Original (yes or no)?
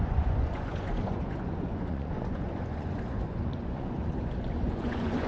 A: no